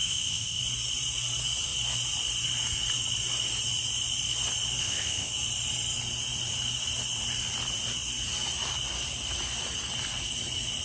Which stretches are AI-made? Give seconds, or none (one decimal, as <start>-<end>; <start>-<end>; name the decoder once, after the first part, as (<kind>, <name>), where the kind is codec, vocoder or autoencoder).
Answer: 0.0-0.6 (codec, ZipCodec); 4.8-5.3